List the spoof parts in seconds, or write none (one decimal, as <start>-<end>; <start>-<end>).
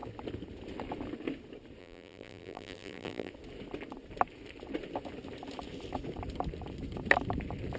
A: 1.8-3.3